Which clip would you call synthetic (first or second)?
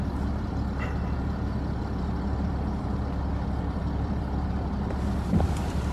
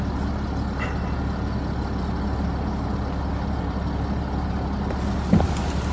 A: first